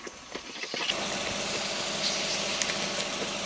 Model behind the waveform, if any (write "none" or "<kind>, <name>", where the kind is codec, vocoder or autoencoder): none